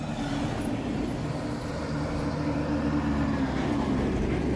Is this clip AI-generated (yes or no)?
no